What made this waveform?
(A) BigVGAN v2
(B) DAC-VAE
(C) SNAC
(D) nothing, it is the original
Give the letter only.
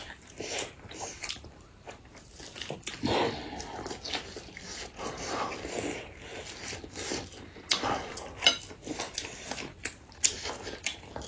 D